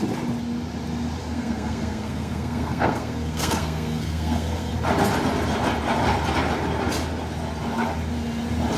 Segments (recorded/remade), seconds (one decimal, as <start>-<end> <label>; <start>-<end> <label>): 0.0-1.2 recorded; 1.2-4.7 remade; 4.7-8.8 recorded